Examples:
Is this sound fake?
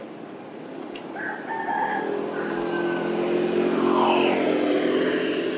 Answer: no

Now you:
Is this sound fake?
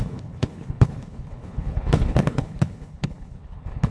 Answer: yes